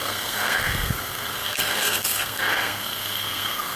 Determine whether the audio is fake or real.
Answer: fake